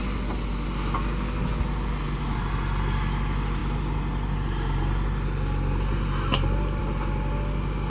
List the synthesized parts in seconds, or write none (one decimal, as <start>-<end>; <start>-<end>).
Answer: none